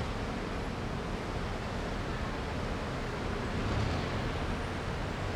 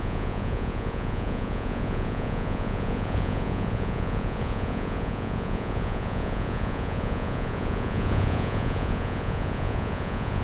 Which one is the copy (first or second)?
second